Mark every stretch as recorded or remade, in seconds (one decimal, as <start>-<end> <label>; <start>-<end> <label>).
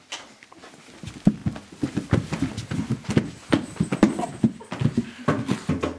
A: 0.0-6.0 recorded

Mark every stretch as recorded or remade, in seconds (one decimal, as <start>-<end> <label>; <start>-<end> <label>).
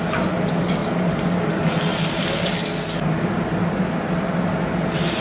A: 0.0-5.2 recorded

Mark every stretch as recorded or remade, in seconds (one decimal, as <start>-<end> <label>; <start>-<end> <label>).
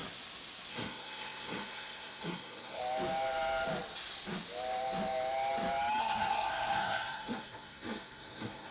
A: 0.0-0.7 recorded; 0.7-2.8 remade; 2.8-6.0 recorded; 6.0-8.7 remade